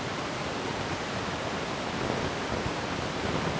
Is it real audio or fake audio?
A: real